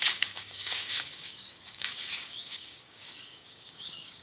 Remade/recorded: remade